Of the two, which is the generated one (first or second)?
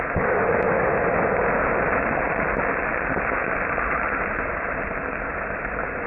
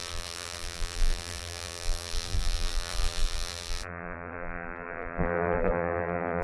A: second